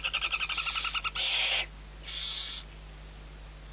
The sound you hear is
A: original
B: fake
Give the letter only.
A